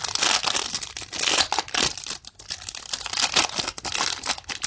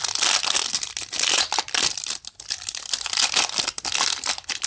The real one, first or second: first